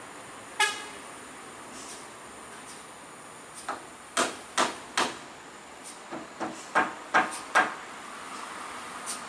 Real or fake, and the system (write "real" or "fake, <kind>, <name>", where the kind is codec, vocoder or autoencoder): real